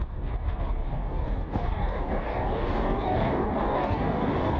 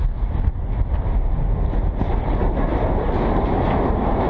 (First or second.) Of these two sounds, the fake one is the first